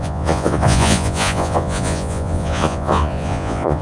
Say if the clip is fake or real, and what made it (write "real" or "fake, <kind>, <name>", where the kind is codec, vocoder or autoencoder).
fake, vocoder, Vocos